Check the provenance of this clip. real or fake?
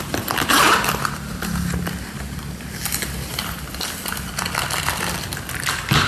real